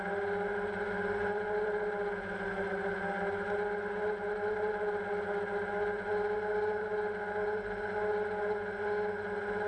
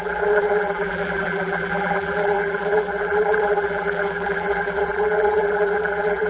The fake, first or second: second